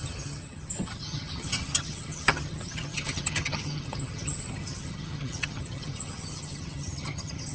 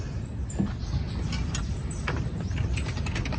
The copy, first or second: first